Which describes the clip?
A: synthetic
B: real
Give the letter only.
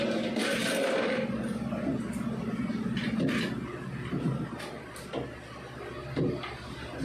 B